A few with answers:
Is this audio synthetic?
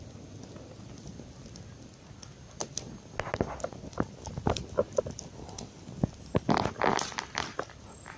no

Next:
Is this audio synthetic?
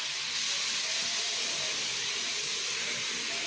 no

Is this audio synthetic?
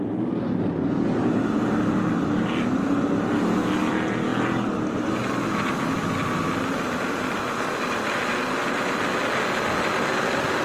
no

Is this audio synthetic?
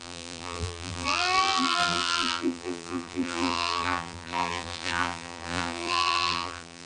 yes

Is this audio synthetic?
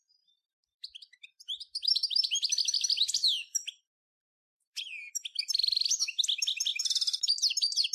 yes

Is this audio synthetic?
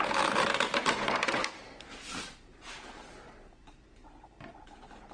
no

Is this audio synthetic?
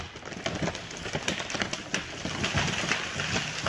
no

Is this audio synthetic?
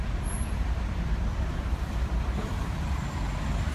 yes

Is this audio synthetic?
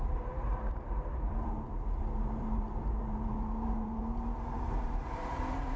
yes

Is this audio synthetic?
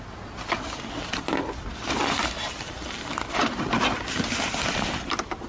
no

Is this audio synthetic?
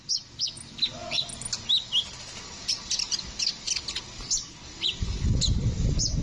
no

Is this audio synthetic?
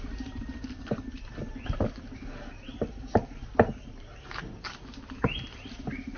no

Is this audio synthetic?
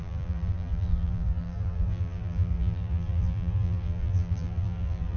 yes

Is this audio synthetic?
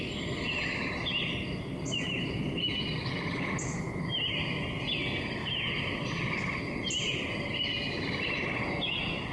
no